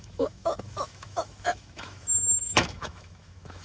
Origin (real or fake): fake